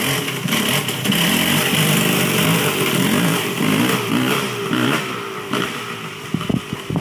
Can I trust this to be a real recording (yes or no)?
yes